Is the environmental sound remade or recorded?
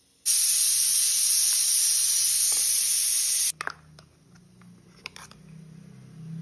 recorded